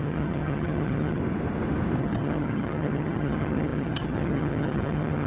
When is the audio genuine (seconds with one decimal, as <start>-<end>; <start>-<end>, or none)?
1.2-2.0